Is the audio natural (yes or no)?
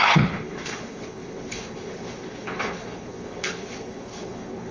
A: no